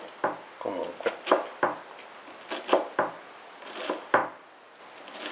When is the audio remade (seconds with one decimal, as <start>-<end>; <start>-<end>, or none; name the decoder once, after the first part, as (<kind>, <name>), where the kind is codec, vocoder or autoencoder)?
none